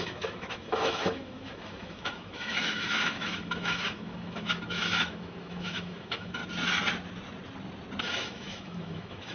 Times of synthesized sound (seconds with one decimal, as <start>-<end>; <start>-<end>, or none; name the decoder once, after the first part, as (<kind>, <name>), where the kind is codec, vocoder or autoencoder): 0.0-6.4 (autoencoder, DAC-VAE); 8.0-9.3

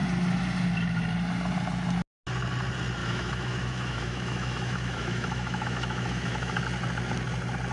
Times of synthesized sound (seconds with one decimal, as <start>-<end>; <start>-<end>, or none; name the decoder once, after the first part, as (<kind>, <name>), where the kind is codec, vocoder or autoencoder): 3.0-6.6 (autoencoder, DAC-VAE)

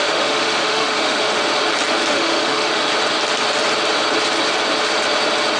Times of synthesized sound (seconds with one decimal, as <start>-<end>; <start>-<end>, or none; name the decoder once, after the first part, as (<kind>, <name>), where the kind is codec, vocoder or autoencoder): 0.0-1.4 (autoencoder, DAC-VAE); 2.1-2.8